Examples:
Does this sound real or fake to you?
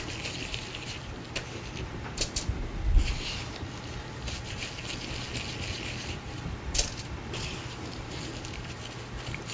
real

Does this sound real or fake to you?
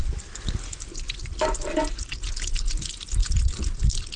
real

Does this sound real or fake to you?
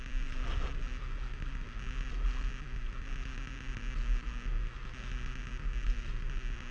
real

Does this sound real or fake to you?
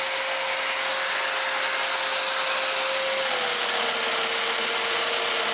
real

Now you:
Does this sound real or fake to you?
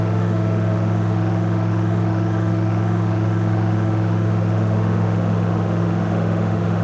fake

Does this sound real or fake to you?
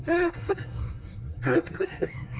fake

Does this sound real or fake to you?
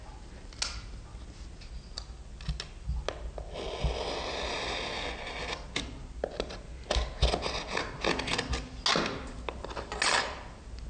real